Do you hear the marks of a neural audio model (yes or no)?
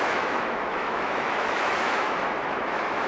yes